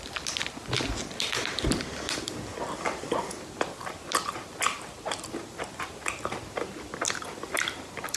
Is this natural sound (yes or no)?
yes